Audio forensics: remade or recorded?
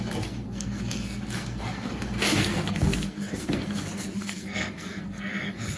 remade